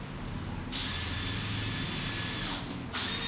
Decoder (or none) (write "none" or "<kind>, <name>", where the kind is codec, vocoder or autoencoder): none